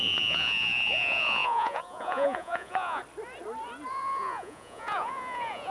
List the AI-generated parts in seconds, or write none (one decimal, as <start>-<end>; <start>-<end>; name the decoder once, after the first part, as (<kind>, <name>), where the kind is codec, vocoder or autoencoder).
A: 0.0-3.0 (vocoder, Vocos); 3.9-5.7